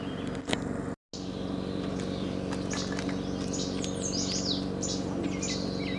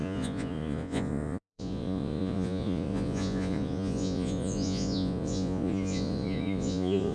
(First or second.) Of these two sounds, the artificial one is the second